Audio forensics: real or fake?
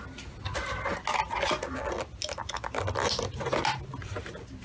real